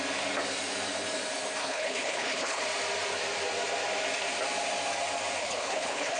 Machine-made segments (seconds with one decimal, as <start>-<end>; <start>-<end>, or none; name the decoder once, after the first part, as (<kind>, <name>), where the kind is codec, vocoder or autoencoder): 1.6-2.6 (codec, HILCodec); 5.4-6.2